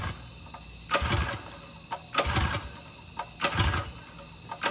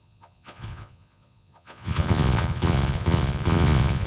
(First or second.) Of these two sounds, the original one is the first